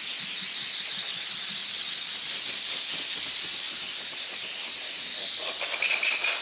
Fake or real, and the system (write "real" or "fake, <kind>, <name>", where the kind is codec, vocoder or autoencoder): real